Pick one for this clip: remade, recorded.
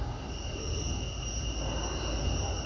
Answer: recorded